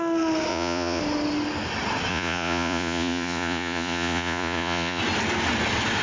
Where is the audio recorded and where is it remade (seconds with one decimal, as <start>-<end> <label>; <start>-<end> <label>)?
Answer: 0.0-0.5 recorded; 0.5-1.0 remade; 1.0-2.1 recorded; 2.1-5.0 remade; 5.0-6.0 recorded

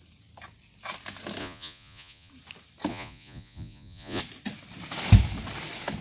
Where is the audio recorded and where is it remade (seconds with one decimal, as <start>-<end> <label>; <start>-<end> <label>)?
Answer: 0.0-1.4 recorded; 1.4-2.3 remade; 2.3-2.9 recorded; 2.9-4.2 remade; 4.2-6.0 recorded

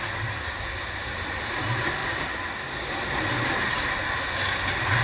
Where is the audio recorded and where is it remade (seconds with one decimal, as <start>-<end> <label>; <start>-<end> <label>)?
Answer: 0.0-5.0 recorded

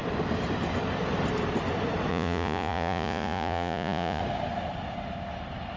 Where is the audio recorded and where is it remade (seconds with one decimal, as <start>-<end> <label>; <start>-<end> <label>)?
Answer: 0.0-2.1 recorded; 2.1-4.2 remade; 4.2-5.8 recorded